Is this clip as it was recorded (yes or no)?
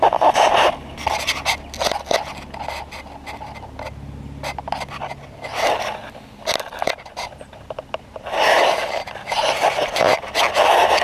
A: yes